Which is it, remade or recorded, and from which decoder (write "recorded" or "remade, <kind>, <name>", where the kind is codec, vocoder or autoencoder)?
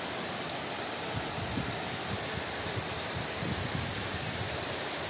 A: remade, vocoder, BigVGAN v2